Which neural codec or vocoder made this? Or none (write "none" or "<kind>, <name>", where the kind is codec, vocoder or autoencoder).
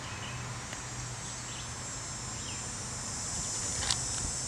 none